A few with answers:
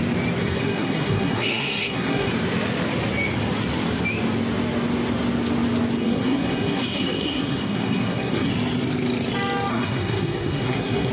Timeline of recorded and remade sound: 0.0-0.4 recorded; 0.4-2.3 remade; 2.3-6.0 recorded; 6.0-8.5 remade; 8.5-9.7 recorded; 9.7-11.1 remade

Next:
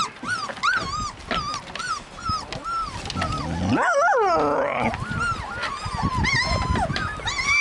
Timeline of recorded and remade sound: 0.0-7.6 recorded